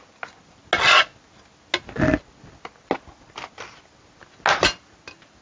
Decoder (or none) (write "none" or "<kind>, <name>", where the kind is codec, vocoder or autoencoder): none